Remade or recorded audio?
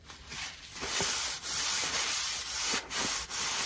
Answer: remade